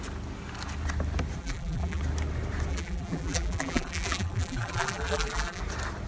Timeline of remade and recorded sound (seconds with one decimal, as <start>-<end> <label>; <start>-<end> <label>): 0.0-1.4 recorded; 1.4-2.0 remade; 2.0-2.7 recorded; 2.7-5.6 remade; 5.6-6.1 recorded